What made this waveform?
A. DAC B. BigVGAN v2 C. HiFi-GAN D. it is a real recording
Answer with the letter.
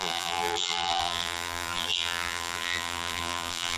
B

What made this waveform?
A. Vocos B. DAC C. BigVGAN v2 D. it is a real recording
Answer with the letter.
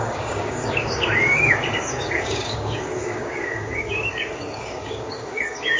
B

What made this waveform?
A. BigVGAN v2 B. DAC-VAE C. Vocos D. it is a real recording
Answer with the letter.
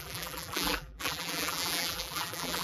A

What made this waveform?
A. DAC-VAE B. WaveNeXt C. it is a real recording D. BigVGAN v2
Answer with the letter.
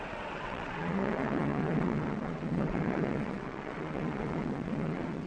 B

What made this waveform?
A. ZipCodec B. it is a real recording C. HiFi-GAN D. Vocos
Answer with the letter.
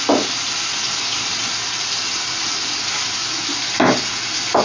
B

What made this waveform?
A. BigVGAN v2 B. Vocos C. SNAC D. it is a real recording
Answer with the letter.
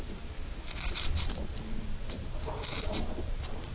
A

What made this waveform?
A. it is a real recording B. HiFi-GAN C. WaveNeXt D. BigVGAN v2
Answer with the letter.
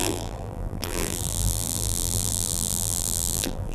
D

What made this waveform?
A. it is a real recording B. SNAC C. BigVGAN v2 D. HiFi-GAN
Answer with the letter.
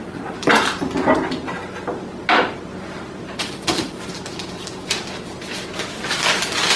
A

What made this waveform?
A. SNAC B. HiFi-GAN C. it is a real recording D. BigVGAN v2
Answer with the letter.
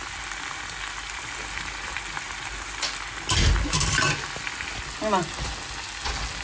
C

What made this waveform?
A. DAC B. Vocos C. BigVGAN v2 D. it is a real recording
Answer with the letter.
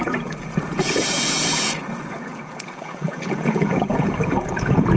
B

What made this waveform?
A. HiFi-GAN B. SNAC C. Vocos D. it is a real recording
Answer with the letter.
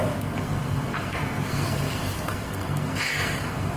B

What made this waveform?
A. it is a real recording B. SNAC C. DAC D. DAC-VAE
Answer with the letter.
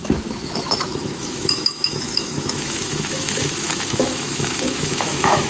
D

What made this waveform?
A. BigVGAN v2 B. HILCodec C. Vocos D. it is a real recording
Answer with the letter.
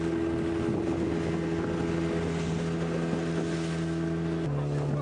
D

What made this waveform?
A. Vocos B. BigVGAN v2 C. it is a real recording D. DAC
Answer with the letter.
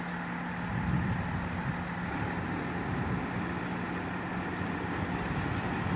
C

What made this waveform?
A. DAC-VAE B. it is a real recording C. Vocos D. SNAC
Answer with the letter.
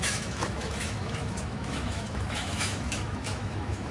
A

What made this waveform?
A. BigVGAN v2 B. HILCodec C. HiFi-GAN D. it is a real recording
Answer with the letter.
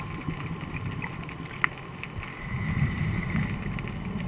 D